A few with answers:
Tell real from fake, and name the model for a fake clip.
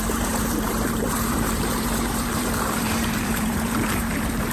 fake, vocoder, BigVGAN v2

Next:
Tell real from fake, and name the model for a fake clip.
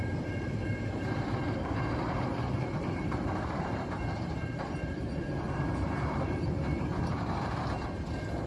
fake, vocoder, BigVGAN v2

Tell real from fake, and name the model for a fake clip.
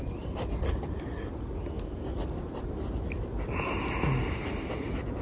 real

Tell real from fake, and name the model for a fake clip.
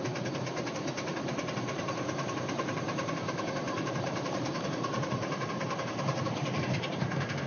fake, vocoder, BigVGAN v2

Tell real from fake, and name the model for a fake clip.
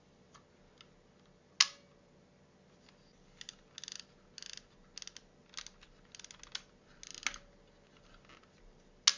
real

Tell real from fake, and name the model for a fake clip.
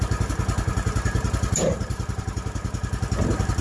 fake, vocoder, BigVGAN v2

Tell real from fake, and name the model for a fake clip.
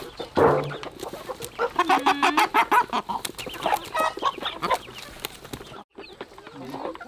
real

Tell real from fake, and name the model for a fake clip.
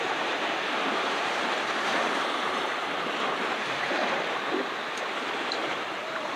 fake, vocoder, BigVGAN v2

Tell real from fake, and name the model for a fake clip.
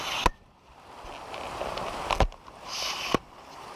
real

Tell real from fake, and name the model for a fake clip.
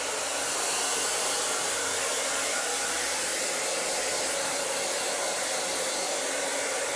fake, vocoder, BigVGAN v2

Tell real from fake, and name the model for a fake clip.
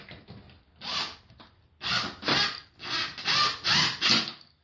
real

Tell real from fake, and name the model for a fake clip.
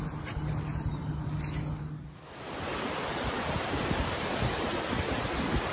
real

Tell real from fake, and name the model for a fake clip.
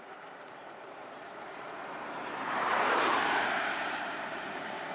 fake, vocoder, BigVGAN v2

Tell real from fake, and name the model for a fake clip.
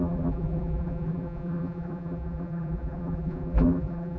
fake, vocoder, BigVGAN v2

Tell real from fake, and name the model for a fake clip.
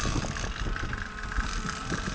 real